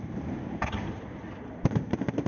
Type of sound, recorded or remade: recorded